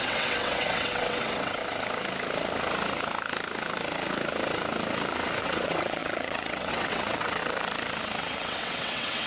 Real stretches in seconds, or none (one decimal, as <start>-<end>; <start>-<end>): 1.6-5.4; 7.4-8.2